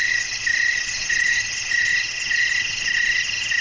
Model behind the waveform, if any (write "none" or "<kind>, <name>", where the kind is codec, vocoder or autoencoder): none